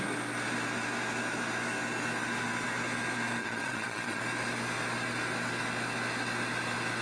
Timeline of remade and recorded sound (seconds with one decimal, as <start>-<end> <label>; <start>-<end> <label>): 0.0-3.4 recorded; 3.4-4.2 remade; 4.2-7.0 recorded